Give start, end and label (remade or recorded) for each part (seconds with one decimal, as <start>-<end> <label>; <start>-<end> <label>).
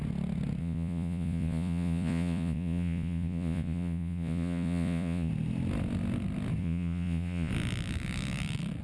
0.0-0.6 recorded; 0.6-5.3 remade; 5.3-6.6 recorded; 6.6-7.5 remade; 7.5-8.8 recorded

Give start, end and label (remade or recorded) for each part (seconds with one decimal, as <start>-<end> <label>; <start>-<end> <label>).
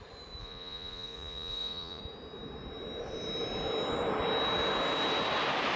0.0-0.4 recorded; 0.4-2.0 remade; 2.0-5.8 recorded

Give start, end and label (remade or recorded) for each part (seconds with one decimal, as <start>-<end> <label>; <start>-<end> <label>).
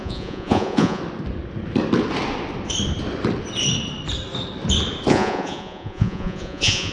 0.0-1.0 remade; 1.0-5.1 recorded; 5.1-6.9 remade